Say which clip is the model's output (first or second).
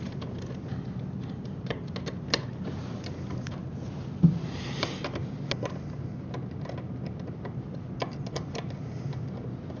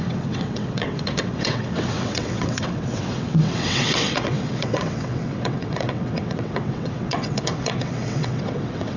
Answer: second